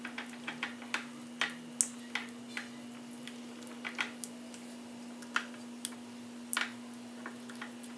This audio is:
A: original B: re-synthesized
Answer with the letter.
A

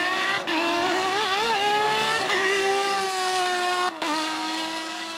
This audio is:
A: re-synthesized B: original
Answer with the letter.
A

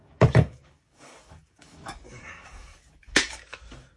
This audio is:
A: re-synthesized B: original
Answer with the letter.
A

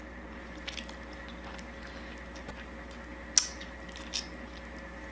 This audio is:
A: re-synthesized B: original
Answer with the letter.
B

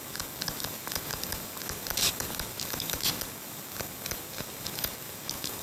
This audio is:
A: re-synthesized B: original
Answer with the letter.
A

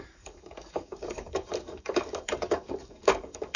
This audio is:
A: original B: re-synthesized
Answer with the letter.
B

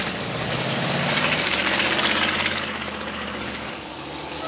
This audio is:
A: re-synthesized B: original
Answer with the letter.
A